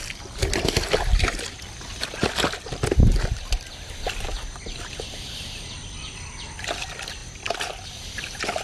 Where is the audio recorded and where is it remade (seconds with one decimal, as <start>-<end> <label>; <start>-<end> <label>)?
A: 0.0-8.6 recorded